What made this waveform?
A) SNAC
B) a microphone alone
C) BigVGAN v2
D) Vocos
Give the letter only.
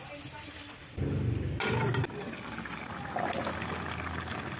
B